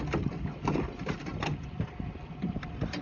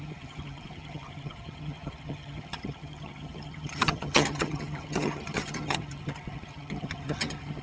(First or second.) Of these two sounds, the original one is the first